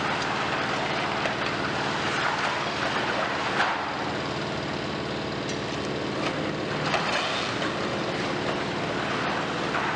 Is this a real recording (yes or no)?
yes